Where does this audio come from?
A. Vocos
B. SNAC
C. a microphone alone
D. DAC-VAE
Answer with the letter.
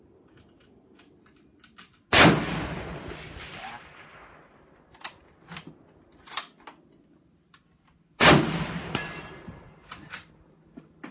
C